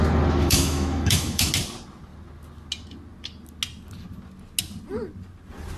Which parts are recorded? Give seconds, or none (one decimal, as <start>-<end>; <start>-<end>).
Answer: 0.0-0.4; 1.5-5.8